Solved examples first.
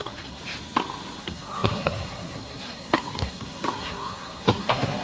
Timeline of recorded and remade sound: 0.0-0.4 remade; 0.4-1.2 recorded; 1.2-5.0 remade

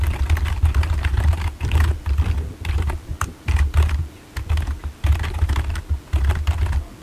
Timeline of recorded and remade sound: 0.0-7.0 recorded